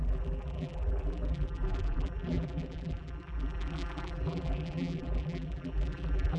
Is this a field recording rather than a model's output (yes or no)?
no